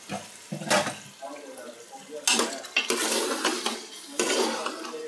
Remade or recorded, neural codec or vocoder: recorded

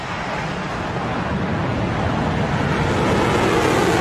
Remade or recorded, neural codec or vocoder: recorded